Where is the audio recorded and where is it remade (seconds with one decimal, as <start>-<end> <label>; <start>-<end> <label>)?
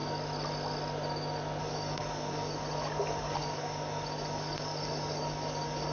0.0-1.6 recorded; 1.6-5.9 remade